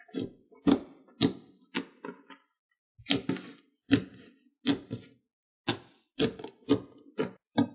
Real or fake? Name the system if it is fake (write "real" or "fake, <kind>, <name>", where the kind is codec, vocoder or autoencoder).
real